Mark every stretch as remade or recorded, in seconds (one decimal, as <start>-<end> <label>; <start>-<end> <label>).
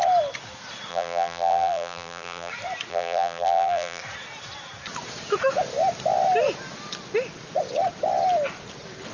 0.0-0.9 recorded; 0.9-2.5 remade; 2.5-2.9 recorded; 2.9-4.0 remade; 4.0-9.1 recorded